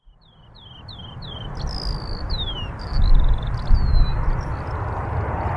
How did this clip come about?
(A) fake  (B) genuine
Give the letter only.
B